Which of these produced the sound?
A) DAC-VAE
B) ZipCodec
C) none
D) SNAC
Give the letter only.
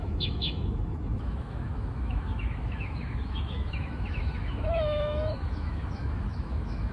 A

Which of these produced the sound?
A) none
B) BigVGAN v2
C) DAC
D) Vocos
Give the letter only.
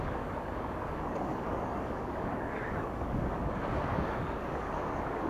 C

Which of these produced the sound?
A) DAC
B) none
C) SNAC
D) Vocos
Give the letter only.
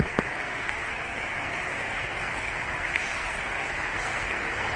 C